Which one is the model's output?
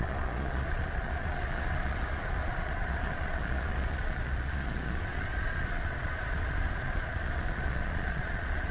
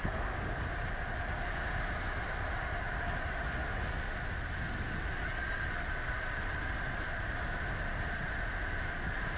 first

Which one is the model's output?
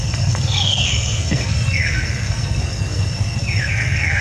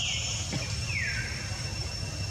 first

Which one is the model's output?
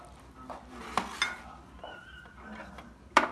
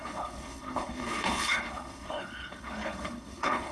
second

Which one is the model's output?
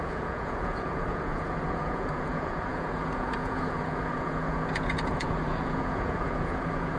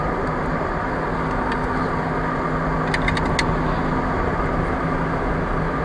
first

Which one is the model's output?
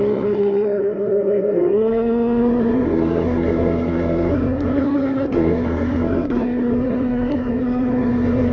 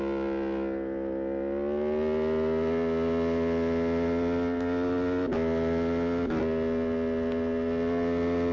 first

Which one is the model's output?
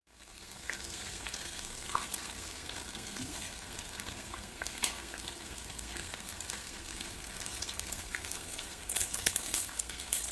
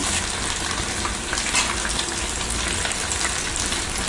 first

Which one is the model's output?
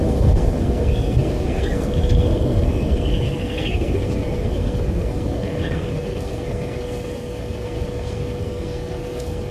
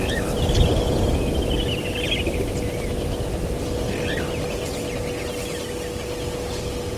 first